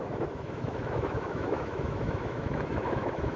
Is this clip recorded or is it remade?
remade